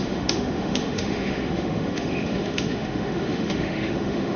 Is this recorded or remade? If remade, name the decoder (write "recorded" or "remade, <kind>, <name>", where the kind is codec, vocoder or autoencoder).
remade, autoencoder, DAC-VAE